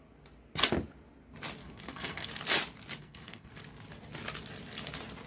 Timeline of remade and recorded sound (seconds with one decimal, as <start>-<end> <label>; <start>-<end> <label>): 0.0-1.6 recorded; 1.6-2.3 remade; 2.3-3.0 recorded; 3.0-3.5 remade; 3.5-5.3 recorded

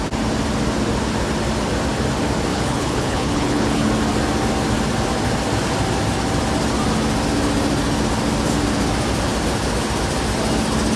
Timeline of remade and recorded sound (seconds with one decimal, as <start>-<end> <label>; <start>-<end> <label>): 0.0-2.5 recorded; 2.5-3.9 remade; 3.9-11.0 recorded

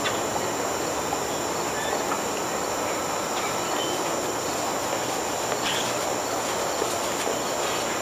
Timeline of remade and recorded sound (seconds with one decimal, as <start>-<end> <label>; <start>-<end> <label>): 0.0-8.0 recorded

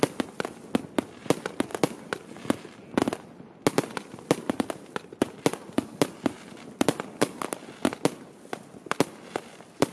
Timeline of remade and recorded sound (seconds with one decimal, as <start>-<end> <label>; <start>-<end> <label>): 0.0-9.9 recorded